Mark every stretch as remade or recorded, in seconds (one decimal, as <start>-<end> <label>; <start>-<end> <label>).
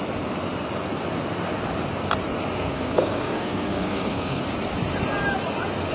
0.0-2.6 recorded; 2.6-4.4 remade; 4.4-5.9 recorded